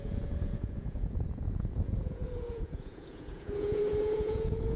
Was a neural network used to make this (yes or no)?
yes